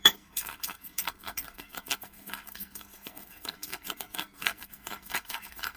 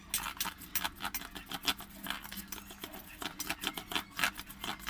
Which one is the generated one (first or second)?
first